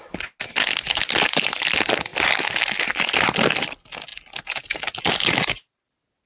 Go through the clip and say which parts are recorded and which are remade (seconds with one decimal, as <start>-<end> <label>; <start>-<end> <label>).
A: 0.0-2.1 recorded; 2.1-2.8 remade; 2.8-6.3 recorded